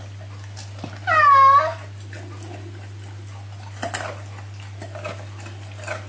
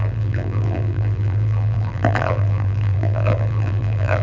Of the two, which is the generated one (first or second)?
second